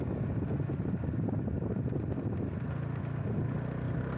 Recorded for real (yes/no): yes